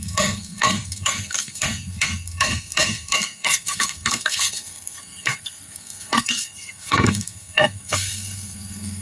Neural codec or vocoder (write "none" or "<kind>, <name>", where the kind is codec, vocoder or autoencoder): codec, SNAC